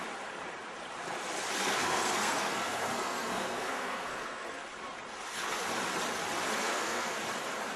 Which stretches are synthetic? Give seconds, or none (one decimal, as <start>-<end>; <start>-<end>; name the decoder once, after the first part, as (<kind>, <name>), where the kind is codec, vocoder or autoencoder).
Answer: 1.6-4.6 (codec, SNAC); 6.6-7.2